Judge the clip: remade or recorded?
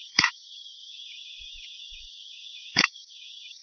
remade